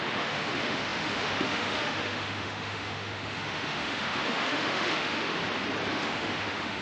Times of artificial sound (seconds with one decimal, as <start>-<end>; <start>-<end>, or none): 0.0-5.4; 5.9-6.8